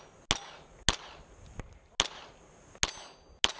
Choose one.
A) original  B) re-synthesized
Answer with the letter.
A